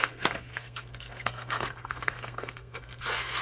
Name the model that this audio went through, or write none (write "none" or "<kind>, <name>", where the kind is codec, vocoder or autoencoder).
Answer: codec, SNAC